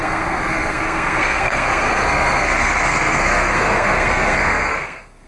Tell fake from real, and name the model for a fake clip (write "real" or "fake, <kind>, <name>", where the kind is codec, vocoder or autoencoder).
fake, codec, SNAC